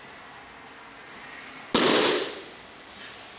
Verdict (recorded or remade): recorded